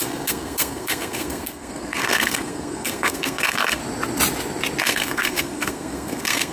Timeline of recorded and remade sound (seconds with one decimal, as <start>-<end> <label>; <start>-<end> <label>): 0.0-3.8 remade; 3.8-4.8 recorded; 4.8-6.5 remade